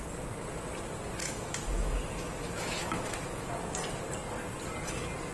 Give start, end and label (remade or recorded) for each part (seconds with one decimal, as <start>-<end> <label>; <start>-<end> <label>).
0.0-1.2 recorded; 1.2-3.5 remade; 3.5-5.3 recorded